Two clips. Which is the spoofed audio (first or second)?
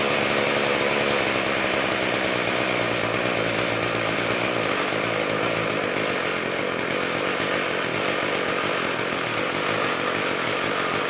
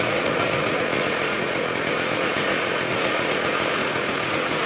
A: second